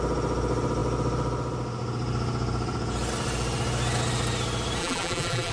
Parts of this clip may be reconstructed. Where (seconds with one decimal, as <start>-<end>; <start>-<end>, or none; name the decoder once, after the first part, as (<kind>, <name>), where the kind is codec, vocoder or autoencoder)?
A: 4.8-5.5 (vocoder, BigVGAN v2)